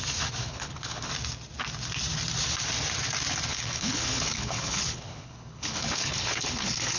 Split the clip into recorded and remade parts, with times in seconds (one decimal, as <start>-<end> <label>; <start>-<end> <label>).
0.0-0.4 recorded; 0.4-1.1 remade; 1.1-3.5 recorded; 3.5-7.0 remade